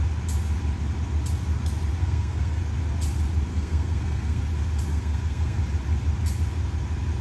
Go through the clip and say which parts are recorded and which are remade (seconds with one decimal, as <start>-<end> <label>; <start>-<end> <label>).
0.0-2.0 recorded; 2.0-2.6 remade; 2.6-3.5 recorded; 3.5-4.4 remade; 4.4-4.9 recorded; 4.9-5.6 remade; 5.6-7.2 recorded